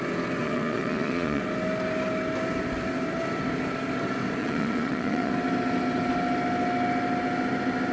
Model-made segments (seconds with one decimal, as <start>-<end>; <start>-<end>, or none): 0.4-1.4; 4.4-5.3